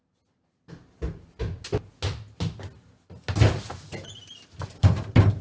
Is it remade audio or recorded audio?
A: recorded